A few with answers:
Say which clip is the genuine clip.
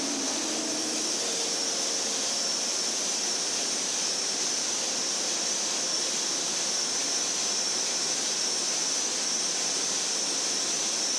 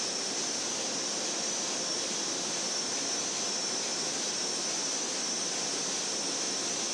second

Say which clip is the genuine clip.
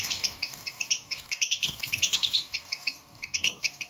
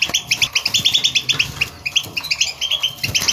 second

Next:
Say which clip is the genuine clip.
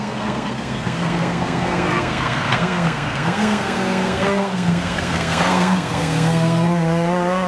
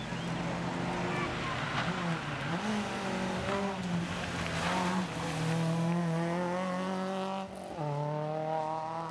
second